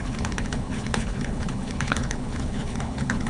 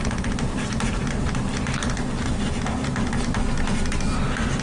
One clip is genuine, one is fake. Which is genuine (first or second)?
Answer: second